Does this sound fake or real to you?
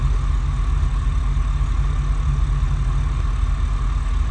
real